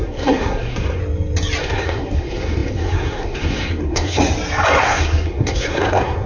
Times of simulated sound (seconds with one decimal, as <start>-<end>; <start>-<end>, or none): 0.0-1.0; 1.6-4.2; 4.8-6.3